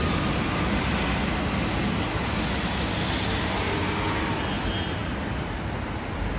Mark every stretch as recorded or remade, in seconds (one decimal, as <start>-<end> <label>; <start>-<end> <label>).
0.0-6.4 recorded